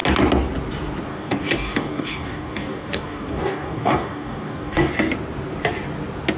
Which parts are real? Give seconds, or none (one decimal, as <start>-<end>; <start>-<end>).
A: 0.0-1.1; 4.9-6.4